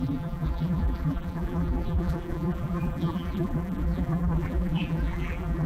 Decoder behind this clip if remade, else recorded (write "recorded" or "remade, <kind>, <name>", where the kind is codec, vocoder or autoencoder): remade, vocoder, BigVGAN v2